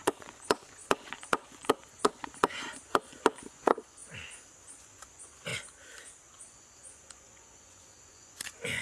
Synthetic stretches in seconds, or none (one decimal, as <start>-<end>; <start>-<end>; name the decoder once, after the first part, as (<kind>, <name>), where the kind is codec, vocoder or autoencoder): 0.0-4.0 (vocoder, Vocos); 4.6-5.5; 6.4-8.8